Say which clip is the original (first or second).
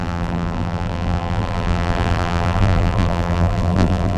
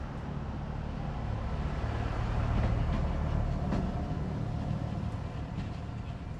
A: second